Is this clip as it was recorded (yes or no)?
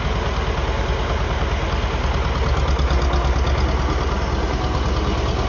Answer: yes